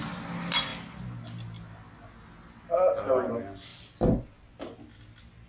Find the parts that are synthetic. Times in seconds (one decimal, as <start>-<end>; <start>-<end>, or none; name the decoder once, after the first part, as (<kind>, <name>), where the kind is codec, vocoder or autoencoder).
none

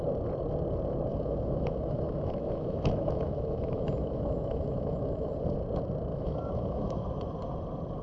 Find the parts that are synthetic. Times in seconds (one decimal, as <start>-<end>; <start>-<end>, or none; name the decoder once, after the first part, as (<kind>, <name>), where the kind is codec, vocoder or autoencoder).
1.1-5.3 (autoencoder, DAC-VAE); 6.1-7.0

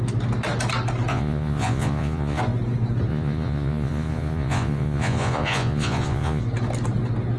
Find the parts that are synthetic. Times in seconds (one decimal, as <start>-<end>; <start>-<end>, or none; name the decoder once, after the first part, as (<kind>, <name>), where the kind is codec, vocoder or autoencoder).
1.1-2.4 (vocoder, Vocos); 3.1-6.4

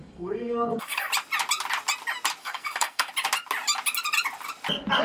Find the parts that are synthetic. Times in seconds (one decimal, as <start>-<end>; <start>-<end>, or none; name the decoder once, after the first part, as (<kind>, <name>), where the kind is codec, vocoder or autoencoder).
0.0-1.1 (codec, SNAC); 2.4-3.1

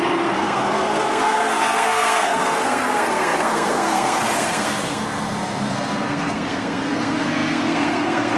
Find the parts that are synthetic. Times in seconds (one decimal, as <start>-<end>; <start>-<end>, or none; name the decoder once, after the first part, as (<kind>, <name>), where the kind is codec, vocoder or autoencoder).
0.0-8.4 (codec, SNAC)

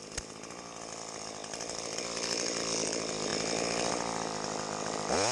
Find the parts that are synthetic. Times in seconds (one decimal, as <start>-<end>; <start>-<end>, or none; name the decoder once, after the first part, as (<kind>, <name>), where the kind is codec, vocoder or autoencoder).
1.4-2.0 (vocoder, BigVGAN v2)

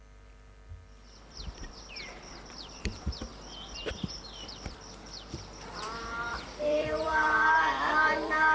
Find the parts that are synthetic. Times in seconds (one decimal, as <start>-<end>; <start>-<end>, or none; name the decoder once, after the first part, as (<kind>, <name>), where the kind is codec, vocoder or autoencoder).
0.0-3.3 (vocoder, BigVGAN v2); 3.9-8.5